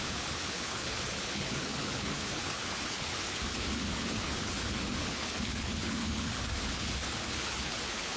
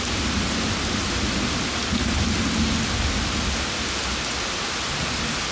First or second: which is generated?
first